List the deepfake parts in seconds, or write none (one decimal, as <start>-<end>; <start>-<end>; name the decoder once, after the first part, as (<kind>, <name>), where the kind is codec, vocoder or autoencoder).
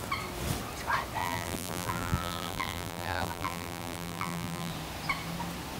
1.2-4.7 (vocoder, BigVGAN v2)